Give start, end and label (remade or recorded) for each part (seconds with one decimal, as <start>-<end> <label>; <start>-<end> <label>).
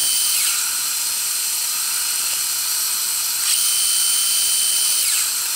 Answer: 0.0-5.6 recorded